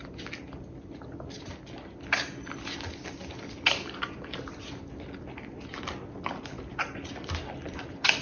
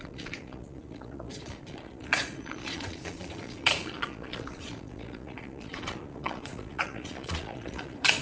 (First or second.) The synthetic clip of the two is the second